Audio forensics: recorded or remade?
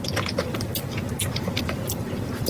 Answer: recorded